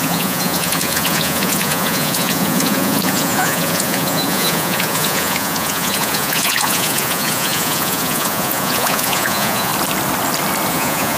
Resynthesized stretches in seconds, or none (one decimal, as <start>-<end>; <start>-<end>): 0.0-9.7; 10.7-11.2